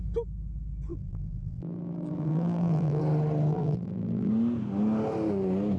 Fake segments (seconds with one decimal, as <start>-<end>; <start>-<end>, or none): 0.9-3.0; 3.5-4.3